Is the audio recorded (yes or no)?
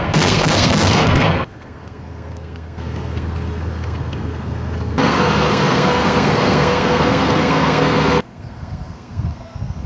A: no